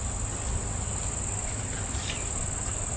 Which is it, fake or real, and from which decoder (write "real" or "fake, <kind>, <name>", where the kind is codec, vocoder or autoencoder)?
real